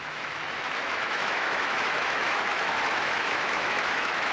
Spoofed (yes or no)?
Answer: yes